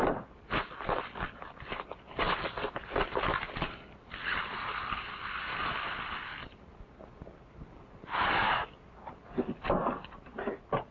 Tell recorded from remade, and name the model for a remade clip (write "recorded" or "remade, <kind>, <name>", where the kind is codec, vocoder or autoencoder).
recorded